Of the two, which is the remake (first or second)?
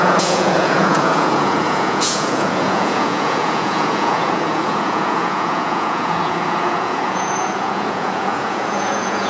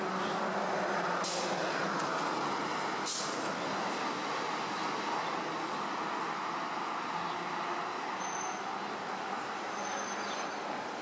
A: first